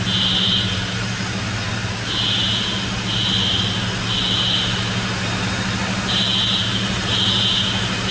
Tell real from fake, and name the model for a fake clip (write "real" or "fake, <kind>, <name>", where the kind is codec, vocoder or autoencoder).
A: real